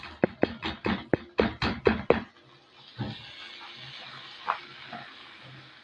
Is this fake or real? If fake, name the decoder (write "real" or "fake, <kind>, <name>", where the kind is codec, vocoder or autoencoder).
real